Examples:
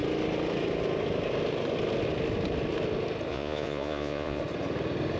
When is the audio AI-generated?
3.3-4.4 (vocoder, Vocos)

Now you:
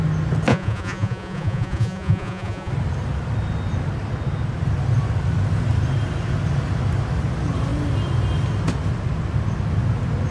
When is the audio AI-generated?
0.5-2.7 (vocoder, Vocos)